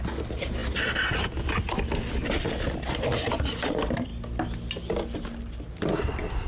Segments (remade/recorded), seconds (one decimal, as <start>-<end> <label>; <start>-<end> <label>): 0.0-6.5 recorded